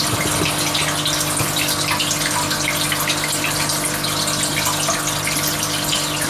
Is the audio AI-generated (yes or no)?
no